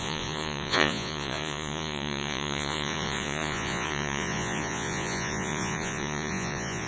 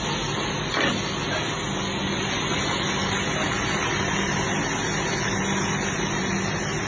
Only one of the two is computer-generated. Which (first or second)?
first